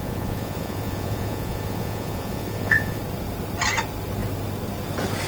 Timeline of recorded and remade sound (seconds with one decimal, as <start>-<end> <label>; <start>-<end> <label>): 0.0-3.0 remade; 3.0-5.3 recorded

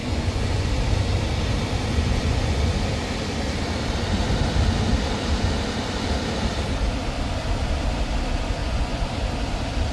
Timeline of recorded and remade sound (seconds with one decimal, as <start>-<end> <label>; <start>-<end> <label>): 0.0-0.7 remade; 0.7-1.9 recorded; 1.9-2.6 remade; 2.6-8.6 recorded; 8.6-9.1 remade; 9.1-9.9 recorded

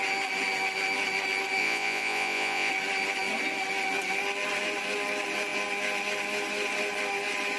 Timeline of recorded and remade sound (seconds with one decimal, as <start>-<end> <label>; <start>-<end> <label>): 0.0-1.6 recorded; 1.6-2.7 remade; 2.7-7.6 recorded

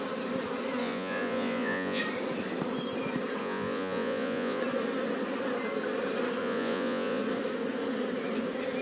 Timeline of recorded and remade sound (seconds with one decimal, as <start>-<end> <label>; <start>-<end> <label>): 0.0-0.8 recorded; 0.8-2.0 remade; 2.0-3.4 recorded; 3.4-4.6 remade; 4.6-6.4 recorded; 6.4-7.2 remade; 7.2-8.8 recorded

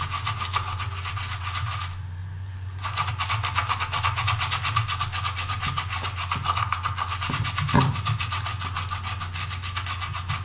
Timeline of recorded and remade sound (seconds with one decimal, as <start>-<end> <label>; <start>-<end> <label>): 0.0-2.2 recorded; 2.2-3.1 remade; 3.1-10.4 recorded

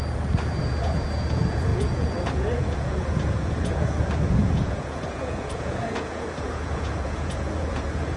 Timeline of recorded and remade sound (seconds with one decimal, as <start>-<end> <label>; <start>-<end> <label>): 0.0-0.6 recorded; 0.6-8.2 remade

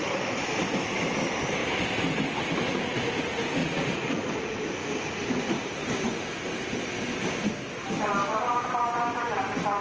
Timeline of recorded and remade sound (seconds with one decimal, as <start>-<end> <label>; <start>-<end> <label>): 0.0-3.6 recorded; 3.6-4.3 remade; 4.3-9.8 recorded